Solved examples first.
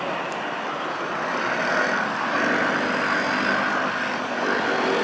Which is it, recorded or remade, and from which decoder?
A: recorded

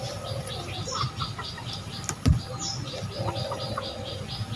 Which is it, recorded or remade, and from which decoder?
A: recorded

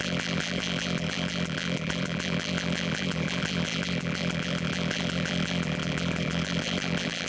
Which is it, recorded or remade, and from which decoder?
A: remade, vocoder, BigVGAN v2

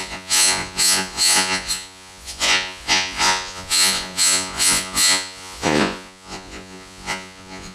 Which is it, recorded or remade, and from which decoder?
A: remade, vocoder, Vocos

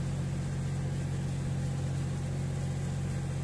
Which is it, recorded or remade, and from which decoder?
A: recorded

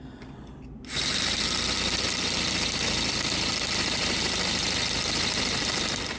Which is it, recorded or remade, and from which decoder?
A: recorded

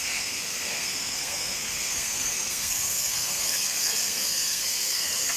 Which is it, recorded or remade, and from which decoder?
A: remade, codec, SNAC